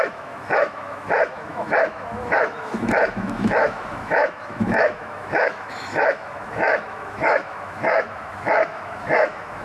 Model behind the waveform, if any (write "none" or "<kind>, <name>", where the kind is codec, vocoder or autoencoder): autoencoder, DAC-VAE